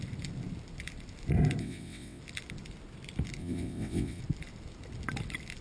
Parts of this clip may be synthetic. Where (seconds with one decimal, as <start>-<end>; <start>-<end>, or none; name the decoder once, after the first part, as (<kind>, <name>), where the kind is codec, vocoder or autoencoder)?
1.6-2.2 (vocoder, WaveNeXt); 3.4-4.2